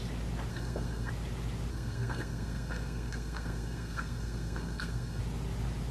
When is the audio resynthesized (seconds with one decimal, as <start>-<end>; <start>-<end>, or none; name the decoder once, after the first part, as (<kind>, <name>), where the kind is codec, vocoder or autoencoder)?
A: 0.5-1.1 (codec, SNAC); 1.7-5.2